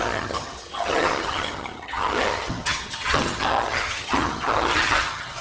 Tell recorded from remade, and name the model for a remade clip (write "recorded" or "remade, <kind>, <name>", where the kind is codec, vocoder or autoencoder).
remade, vocoder, HiFi-GAN